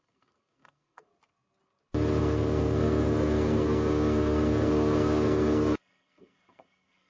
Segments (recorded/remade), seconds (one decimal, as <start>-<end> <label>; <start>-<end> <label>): 0.0-1.1 remade; 1.1-2.2 recorded; 2.2-7.1 remade